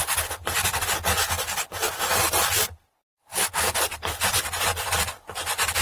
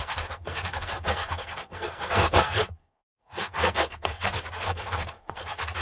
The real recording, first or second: first